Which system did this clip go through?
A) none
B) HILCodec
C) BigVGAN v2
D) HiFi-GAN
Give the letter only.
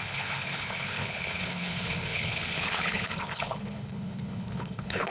B